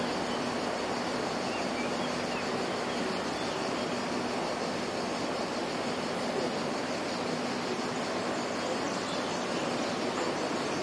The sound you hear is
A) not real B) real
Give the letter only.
B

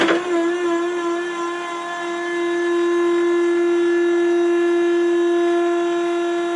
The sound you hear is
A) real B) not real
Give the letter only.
A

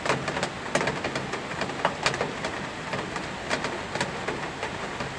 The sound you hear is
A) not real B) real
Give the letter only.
B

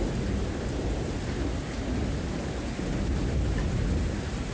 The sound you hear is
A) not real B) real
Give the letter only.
B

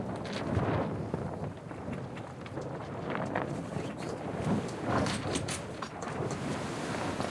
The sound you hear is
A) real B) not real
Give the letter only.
A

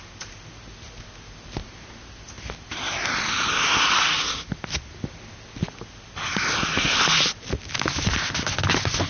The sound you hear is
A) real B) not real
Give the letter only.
A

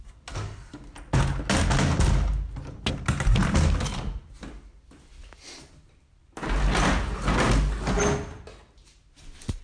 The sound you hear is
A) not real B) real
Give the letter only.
B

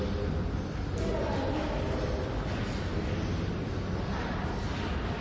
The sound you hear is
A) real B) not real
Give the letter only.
A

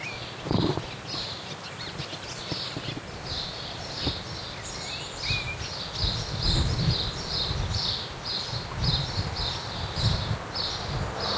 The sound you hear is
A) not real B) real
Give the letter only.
B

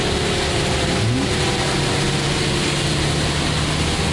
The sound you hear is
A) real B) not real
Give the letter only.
A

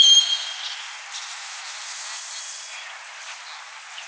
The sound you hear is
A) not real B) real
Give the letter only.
B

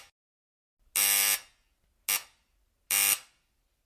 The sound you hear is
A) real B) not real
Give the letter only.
A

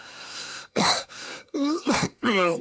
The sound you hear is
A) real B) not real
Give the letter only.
B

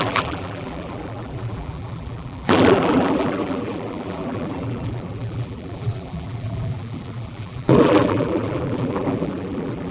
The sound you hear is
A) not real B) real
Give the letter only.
A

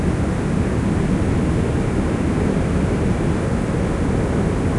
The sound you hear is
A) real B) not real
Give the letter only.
A